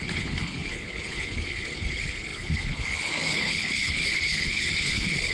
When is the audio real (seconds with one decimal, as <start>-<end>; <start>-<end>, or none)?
none